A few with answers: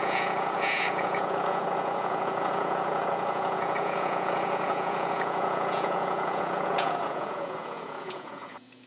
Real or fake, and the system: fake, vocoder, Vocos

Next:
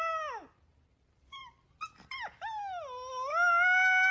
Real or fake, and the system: real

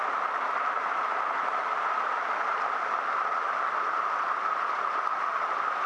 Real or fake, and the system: real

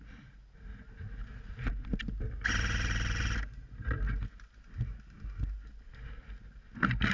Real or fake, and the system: real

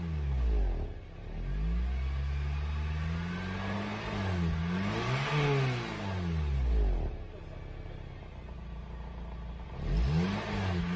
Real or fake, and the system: real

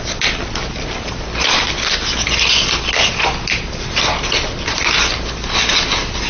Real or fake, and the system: real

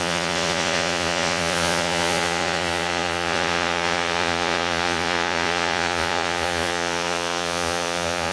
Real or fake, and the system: fake, vocoder, Vocos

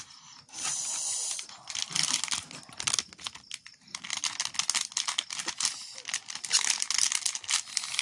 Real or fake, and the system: real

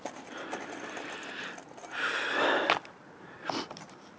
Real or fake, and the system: real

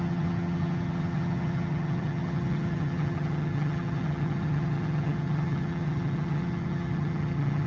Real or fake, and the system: fake, vocoder, HiFi-GAN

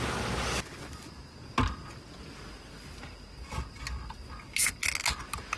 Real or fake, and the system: real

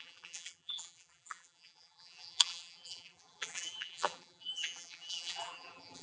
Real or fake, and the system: fake, vocoder, BigVGAN v2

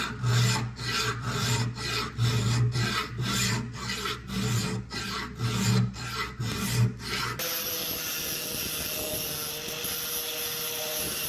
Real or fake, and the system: real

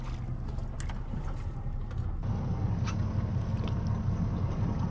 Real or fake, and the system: real